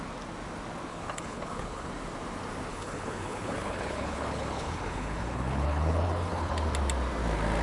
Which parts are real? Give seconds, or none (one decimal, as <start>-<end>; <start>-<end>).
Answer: 0.0-0.9; 1.9-2.7; 6.6-7.6